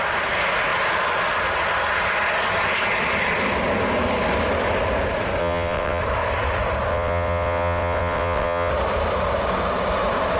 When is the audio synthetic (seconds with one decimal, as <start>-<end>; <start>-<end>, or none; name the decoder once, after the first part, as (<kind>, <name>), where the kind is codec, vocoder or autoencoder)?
5.4-6.0 (vocoder, WaveNeXt); 6.9-8.7